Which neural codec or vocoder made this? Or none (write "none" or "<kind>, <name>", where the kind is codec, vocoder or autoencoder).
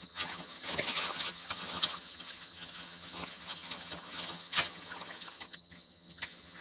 vocoder, HiFi-GAN